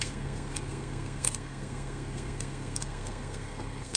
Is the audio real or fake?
fake